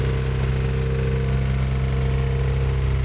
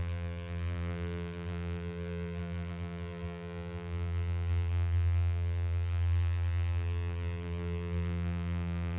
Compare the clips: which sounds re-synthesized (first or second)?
second